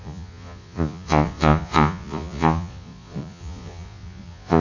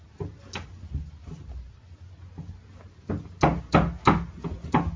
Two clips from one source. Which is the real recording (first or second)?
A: second